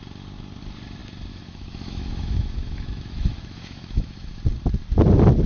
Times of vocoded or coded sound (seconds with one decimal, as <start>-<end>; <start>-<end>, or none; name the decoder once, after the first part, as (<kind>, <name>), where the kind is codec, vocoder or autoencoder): 1.3-4.4 (autoencoder, DAC-VAE)